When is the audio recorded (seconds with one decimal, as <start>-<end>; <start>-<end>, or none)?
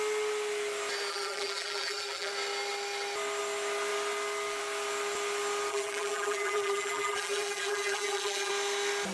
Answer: 0.0-1.1; 2.3-5.7; 8.5-9.1